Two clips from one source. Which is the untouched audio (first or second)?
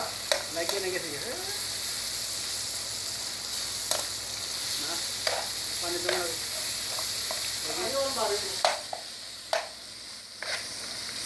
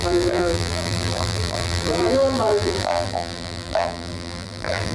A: first